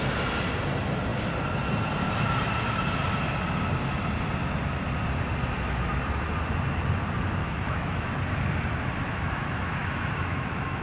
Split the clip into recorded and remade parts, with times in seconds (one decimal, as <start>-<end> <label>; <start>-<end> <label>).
0.0-7.4 recorded; 7.4-8.1 remade; 8.1-9.0 recorded; 9.0-10.8 remade